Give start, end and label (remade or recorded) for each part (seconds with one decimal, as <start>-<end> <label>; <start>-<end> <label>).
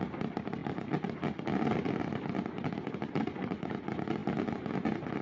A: 0.0-5.2 recorded